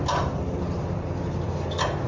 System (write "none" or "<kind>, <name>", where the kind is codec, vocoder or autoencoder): none